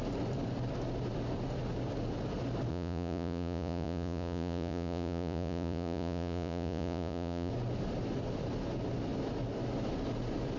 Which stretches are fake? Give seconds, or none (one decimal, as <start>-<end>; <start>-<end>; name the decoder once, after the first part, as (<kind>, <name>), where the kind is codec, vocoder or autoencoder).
2.7-7.5 (vocoder, Vocos)